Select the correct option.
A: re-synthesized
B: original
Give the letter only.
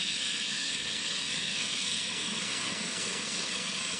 A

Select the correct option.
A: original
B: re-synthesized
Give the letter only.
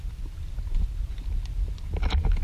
A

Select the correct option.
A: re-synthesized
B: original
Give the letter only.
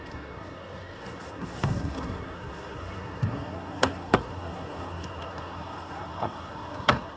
A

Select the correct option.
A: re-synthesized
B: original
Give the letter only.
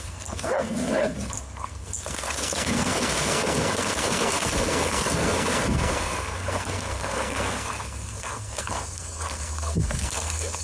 A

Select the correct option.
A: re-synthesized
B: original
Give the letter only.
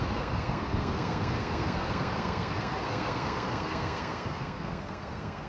A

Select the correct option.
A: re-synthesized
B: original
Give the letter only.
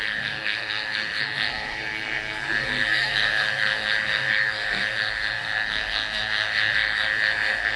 A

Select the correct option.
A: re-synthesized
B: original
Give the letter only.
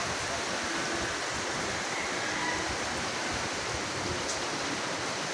B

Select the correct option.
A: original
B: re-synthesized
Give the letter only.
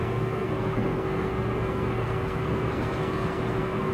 B